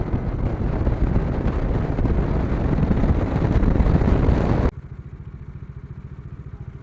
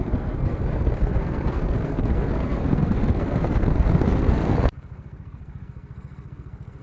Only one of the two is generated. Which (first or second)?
second